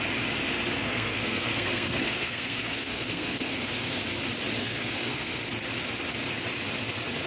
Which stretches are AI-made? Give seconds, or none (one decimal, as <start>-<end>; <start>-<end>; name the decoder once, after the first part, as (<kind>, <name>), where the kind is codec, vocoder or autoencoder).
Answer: 0.8-4.0 (codec, SNAC); 4.6-5.4